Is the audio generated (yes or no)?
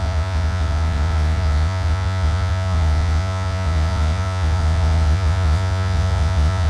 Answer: yes